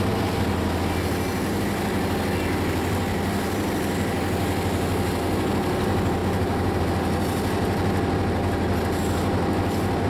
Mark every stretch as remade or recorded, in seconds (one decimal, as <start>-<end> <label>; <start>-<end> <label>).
0.0-6.2 recorded; 6.2-6.8 remade; 6.8-10.1 recorded